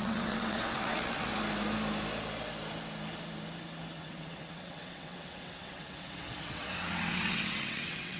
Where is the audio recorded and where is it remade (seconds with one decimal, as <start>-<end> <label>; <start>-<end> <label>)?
0.0-1.3 remade; 1.3-3.9 recorded; 3.9-8.2 remade